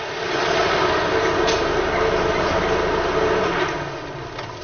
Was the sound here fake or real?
real